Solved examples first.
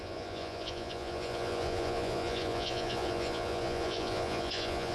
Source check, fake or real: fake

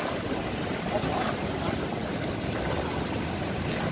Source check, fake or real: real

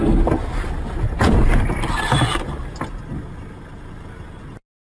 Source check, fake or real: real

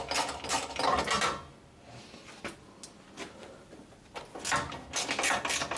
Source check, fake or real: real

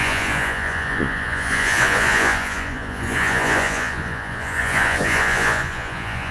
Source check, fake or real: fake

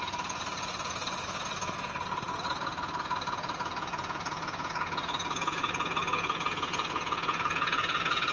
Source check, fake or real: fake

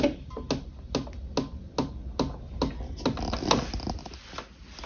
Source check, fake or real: real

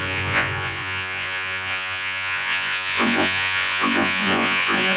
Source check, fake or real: fake